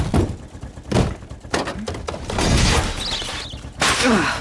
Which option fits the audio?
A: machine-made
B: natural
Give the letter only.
B